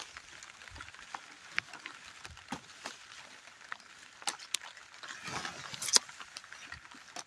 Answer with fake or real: real